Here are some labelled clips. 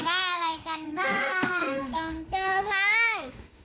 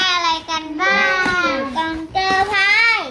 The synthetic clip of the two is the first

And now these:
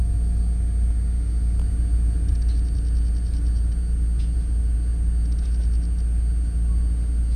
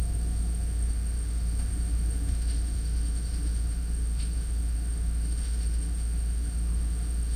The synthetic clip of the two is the second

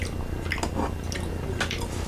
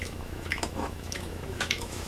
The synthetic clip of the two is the second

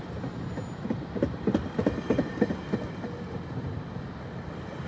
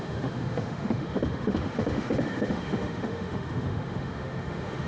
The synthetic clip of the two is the second